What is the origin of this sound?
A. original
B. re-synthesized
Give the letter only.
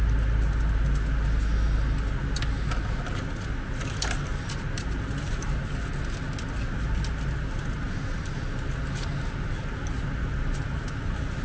A